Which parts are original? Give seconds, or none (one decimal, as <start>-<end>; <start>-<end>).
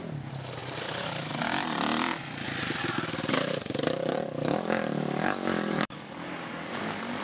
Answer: 0.0-2.8